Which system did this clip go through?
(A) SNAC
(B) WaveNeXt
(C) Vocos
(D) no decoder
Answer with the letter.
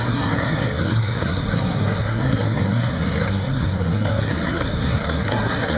A